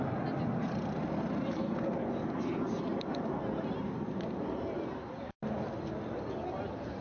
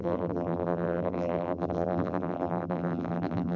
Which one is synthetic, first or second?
second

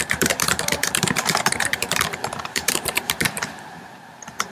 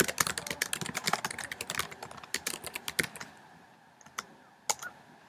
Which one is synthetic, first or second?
first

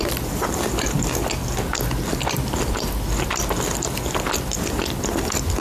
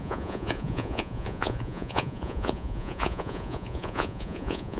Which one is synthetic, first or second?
second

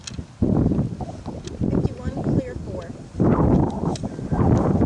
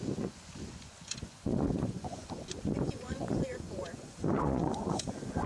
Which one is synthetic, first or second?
second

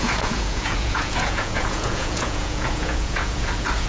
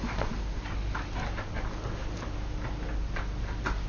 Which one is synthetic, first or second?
first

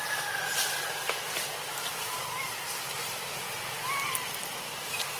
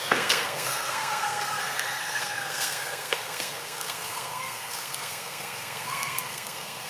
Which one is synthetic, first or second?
second